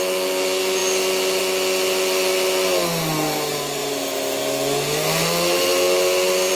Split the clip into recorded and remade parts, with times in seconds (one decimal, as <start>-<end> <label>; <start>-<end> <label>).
0.0-6.5 recorded